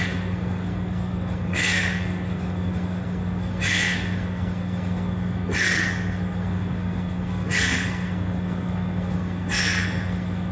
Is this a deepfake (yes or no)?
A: yes